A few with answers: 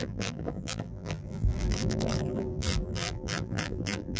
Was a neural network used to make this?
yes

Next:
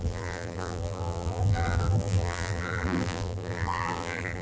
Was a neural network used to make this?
yes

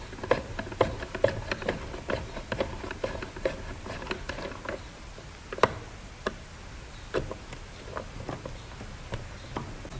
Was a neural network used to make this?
no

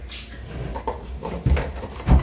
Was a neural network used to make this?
no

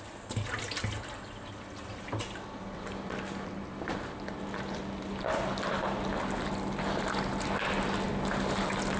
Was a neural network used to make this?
no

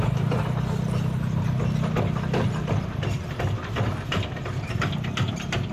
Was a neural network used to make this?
no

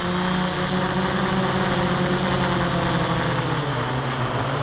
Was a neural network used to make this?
no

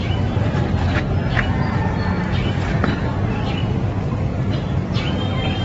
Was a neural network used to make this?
no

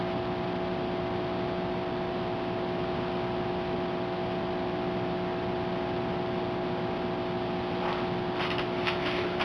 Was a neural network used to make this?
no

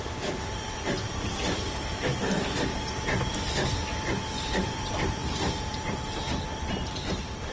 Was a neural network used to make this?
yes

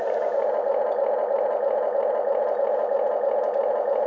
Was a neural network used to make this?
no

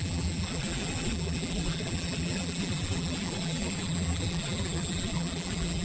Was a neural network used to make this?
yes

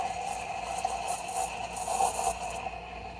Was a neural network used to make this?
no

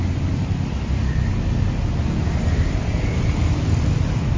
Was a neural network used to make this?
no